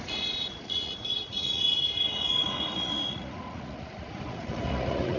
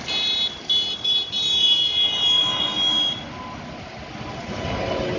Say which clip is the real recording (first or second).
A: second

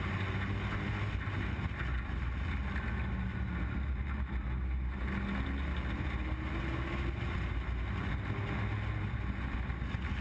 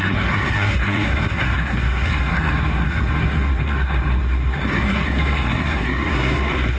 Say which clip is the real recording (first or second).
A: first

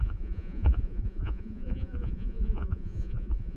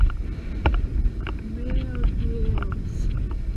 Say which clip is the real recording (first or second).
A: second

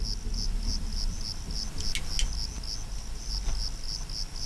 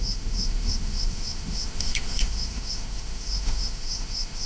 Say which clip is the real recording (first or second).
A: first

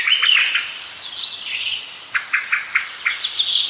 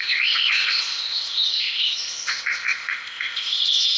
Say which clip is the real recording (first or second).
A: first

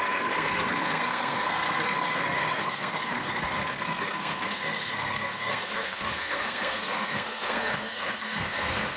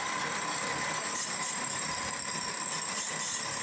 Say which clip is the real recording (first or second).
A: second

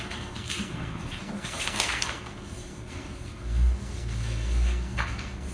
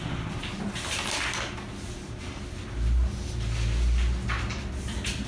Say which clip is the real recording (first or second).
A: second